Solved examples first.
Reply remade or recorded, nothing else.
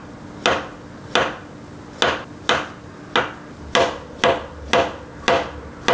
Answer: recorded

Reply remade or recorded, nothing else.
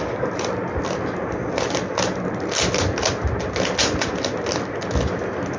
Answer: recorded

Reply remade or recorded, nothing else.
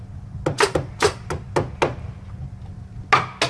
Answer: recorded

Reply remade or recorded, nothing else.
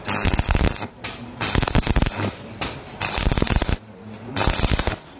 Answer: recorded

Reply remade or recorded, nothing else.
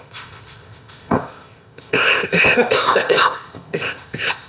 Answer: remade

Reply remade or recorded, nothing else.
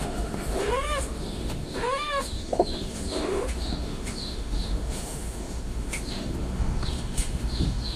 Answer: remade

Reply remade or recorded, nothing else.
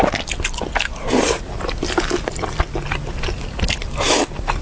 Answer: recorded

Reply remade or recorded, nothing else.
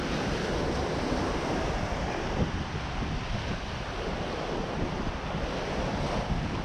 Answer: recorded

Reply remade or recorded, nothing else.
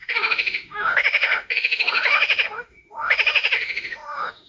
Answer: remade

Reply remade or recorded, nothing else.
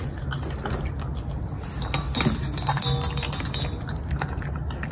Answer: recorded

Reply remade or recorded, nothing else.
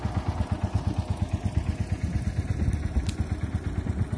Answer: recorded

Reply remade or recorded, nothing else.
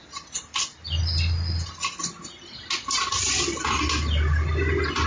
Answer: recorded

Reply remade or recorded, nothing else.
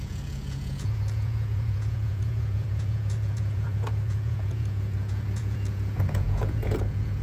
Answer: remade